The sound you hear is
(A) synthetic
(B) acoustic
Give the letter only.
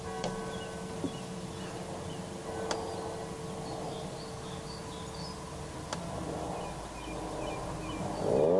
B